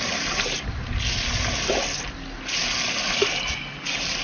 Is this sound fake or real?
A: real